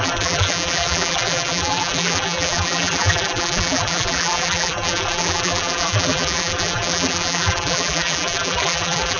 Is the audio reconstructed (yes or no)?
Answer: yes